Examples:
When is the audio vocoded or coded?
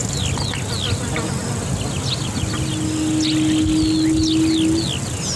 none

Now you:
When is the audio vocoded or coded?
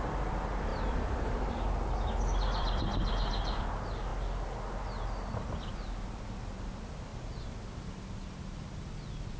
0.7-1.5 (vocoder, BigVGAN v2); 2.3-3.1